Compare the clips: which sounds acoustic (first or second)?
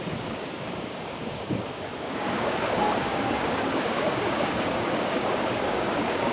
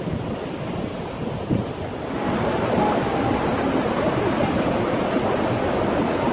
second